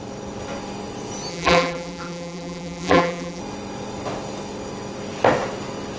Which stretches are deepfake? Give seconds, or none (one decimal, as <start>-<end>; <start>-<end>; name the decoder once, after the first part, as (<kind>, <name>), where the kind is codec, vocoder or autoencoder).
1.3-3.4 (vocoder, BigVGAN v2)